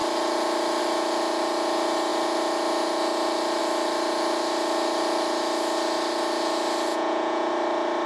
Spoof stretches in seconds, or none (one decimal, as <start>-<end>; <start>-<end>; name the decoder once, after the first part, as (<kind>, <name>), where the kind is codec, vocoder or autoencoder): 6.9-7.5 (vocoder, Vocos)